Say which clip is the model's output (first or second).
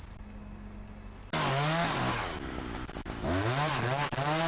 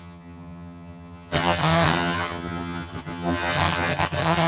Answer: second